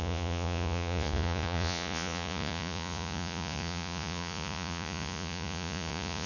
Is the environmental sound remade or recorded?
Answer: remade